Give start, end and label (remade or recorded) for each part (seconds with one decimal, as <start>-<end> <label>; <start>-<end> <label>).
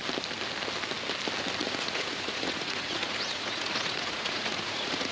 0.0-1.6 recorded; 1.6-5.1 remade